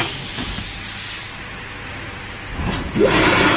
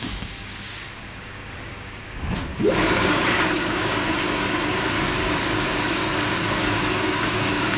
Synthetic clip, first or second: second